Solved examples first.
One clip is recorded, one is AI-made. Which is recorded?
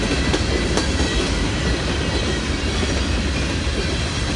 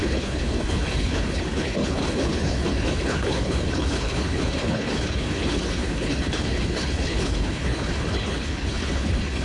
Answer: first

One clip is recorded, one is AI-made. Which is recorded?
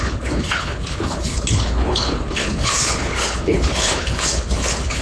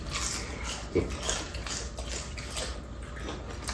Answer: second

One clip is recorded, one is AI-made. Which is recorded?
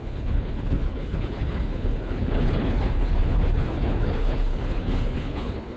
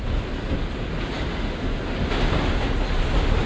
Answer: second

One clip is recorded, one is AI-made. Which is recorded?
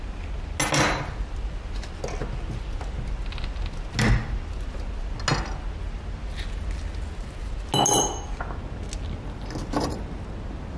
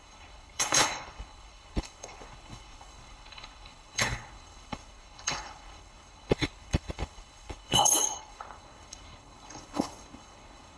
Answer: first